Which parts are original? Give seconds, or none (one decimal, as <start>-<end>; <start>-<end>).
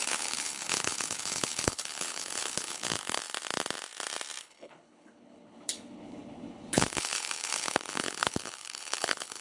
3.2-4.4